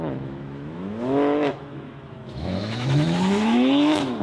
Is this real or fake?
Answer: fake